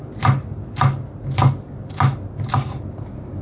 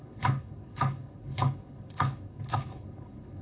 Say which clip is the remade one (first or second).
second